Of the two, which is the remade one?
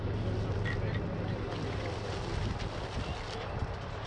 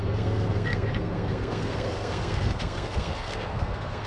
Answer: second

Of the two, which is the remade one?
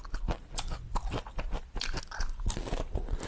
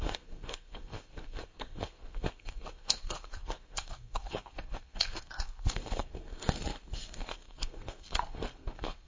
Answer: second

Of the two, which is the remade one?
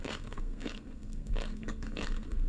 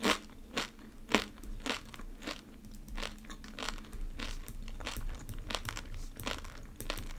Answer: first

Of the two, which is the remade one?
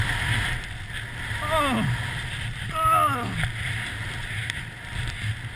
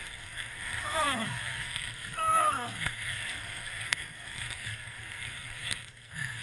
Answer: second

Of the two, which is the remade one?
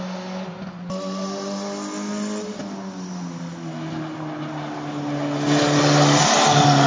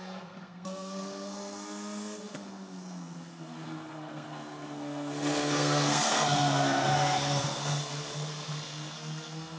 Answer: second